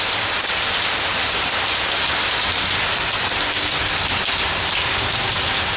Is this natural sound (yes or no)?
yes